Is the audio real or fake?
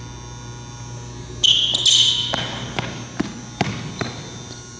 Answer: real